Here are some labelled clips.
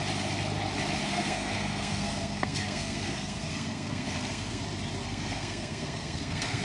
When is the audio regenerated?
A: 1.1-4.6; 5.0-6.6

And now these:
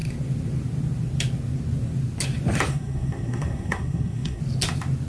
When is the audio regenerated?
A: 2.7-4.4

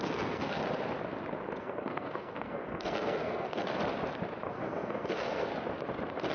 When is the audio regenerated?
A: 0.0-0.6; 1.6-3.8; 4.5-5.5

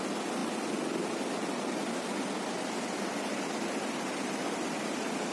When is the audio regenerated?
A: none